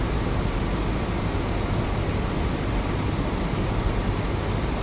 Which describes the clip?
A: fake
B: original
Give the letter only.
A